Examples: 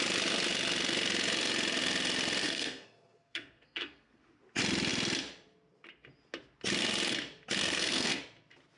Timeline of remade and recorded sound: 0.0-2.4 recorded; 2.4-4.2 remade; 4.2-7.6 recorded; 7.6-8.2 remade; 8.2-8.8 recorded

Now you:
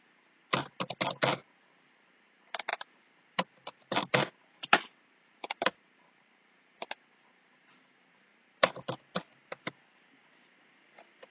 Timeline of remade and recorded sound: 0.0-2.7 recorded; 2.7-6.8 remade; 6.8-8.3 recorded; 8.3-9.0 remade; 9.0-11.3 recorded